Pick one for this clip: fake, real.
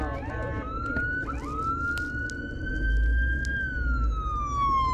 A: real